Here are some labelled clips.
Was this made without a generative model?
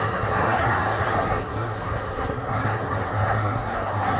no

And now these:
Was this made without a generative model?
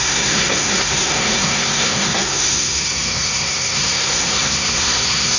no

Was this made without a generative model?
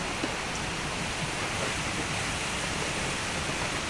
yes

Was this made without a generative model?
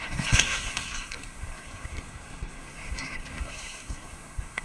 no